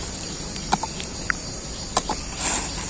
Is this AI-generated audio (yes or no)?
no